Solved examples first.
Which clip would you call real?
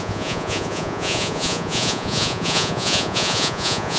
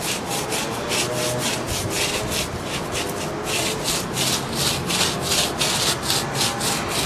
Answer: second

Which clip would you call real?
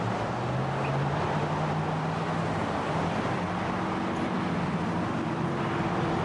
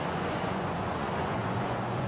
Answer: first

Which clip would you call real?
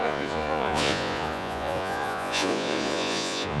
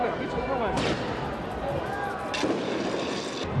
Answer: second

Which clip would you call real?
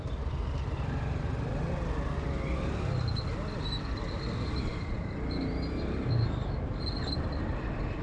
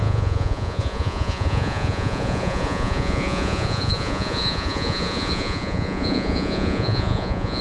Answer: first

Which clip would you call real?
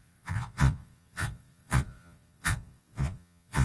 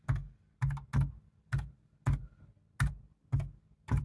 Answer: second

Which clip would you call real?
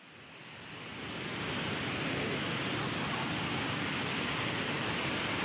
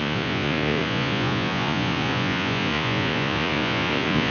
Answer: first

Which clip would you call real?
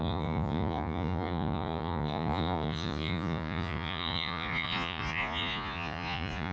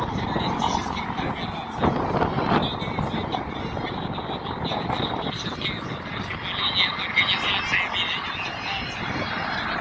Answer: second